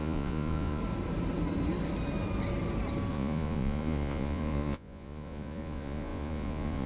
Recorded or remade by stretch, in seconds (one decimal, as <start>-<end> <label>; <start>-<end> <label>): 0.0-0.8 remade; 0.8-3.1 recorded; 3.1-6.9 remade